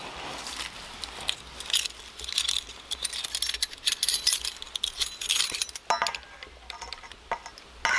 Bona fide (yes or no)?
yes